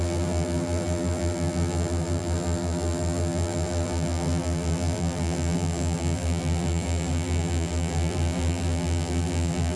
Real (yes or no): no